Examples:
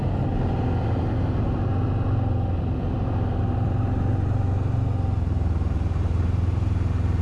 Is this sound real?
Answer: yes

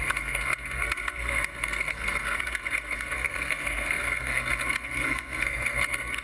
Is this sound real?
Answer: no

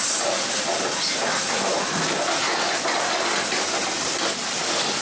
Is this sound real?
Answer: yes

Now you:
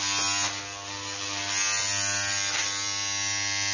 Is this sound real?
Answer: yes